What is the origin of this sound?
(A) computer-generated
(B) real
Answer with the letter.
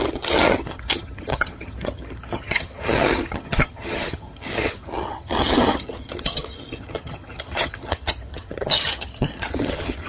A